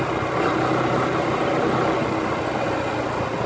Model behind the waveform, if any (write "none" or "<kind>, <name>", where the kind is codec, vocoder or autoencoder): none